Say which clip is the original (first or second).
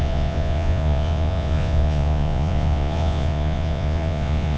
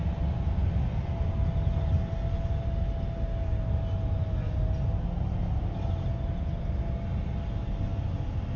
second